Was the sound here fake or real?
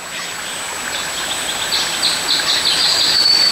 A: real